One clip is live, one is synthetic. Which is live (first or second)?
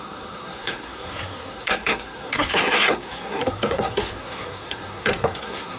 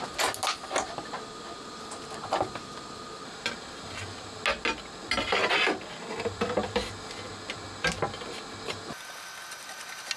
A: second